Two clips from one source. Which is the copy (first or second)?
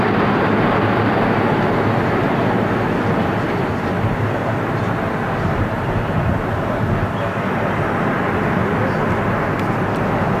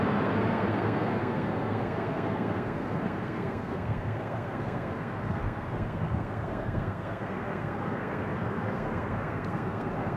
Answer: second